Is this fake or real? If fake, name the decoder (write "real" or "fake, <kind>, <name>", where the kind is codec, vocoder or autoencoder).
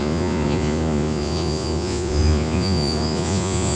fake, vocoder, Vocos